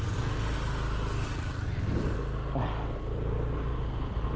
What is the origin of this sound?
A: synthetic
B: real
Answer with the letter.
B